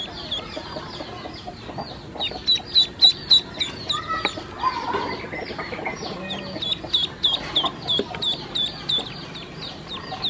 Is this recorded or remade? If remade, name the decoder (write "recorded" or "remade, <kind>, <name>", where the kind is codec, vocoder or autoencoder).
recorded